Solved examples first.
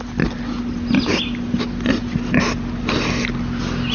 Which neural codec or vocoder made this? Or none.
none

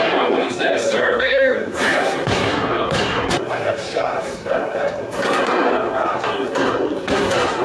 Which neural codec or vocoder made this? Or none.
codec, SNAC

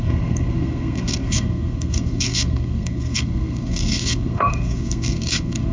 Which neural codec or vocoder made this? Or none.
codec, SNAC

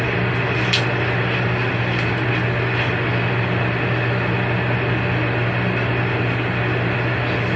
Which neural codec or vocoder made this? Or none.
none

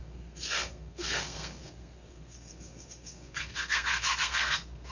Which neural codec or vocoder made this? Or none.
codec, SNAC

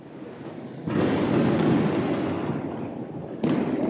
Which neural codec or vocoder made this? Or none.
none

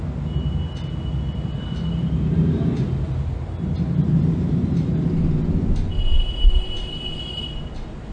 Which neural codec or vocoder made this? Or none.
none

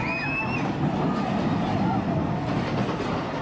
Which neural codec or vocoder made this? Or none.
none